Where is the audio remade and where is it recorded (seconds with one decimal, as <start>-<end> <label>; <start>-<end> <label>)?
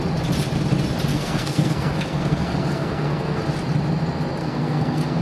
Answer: 0.0-1.1 recorded; 1.1-3.4 remade; 3.4-4.4 recorded; 4.4-5.2 remade